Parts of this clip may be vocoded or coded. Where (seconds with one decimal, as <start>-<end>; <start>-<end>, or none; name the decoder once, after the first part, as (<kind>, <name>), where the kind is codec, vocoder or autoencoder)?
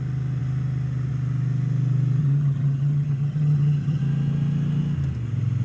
2.2-4.0 (vocoder, HiFi-GAN)